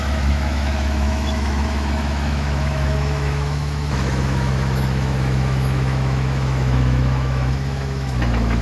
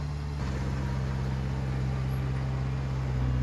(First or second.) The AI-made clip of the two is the first